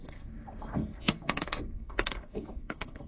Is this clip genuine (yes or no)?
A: no